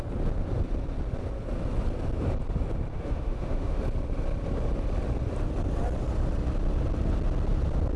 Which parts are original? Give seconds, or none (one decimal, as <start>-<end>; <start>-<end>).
0.0-2.9; 3.8-8.0

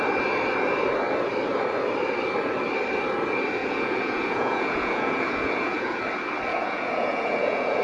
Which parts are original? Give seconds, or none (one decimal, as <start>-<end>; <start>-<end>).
0.0-3.6; 6.0-6.5

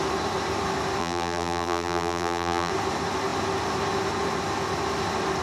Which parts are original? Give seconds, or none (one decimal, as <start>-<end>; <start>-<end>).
0.0-1.0; 2.7-5.4

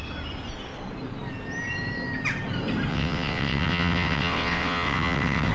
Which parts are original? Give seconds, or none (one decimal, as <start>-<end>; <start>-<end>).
0.0-2.9

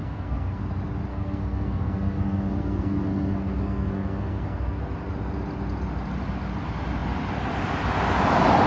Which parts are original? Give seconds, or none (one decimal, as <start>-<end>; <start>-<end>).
0.6-1.1; 4.8-8.7

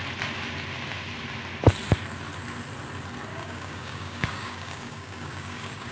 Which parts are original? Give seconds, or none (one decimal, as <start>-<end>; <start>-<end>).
0.0-3.3